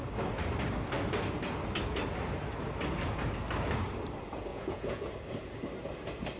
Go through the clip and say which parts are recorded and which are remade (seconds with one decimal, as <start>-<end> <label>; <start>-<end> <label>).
0.0-4.5 recorded; 4.5-5.0 remade; 5.0-6.4 recorded